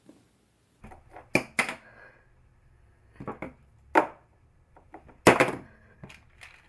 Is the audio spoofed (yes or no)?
no